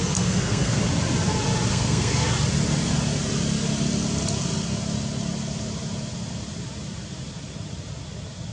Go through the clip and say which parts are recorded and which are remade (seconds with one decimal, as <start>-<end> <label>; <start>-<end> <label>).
0.0-0.8 remade; 0.8-1.7 recorded; 1.7-2.3 remade; 2.3-8.5 recorded